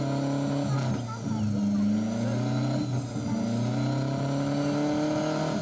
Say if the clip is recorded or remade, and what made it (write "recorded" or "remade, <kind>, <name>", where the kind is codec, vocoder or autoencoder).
recorded